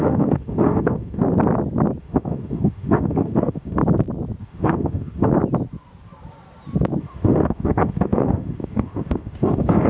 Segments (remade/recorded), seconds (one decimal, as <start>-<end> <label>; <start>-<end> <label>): 0.0-1.2 remade; 1.2-2.0 recorded; 2.0-3.8 remade; 3.8-4.4 recorded; 4.4-5.3 remade; 5.3-7.0 recorded; 7.0-9.9 remade